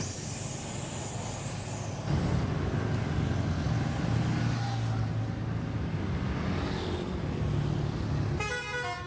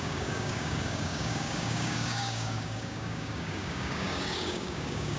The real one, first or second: first